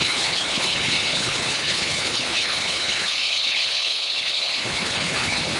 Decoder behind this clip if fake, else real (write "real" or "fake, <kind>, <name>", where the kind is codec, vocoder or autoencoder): fake, codec, HILCodec